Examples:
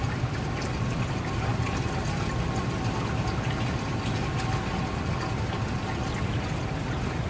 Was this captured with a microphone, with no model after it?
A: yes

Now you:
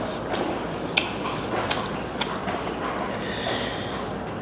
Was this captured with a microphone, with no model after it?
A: yes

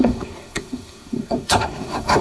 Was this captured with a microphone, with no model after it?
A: no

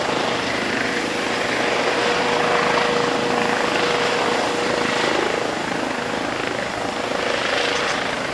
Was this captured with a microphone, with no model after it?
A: yes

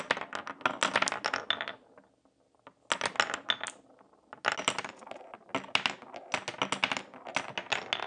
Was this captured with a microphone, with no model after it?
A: yes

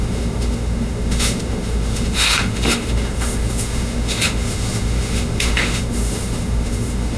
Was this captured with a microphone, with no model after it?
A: no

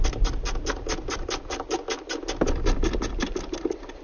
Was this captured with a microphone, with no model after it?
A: no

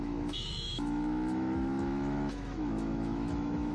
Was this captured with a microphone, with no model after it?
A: no